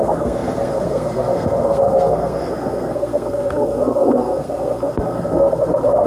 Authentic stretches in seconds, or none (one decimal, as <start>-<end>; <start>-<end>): none